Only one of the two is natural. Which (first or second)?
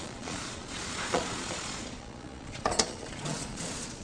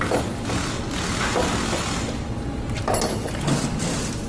second